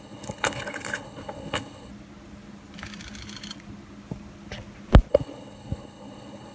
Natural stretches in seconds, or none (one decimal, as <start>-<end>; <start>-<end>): 1.9-5.1